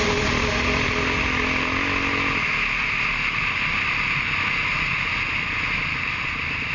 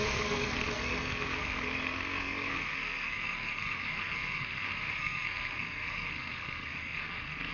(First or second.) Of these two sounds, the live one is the first